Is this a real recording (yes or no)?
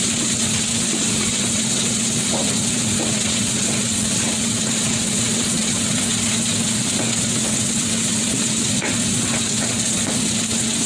no